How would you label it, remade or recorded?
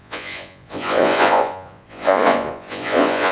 remade